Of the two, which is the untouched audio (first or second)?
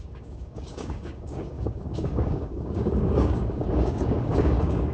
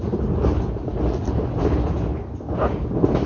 second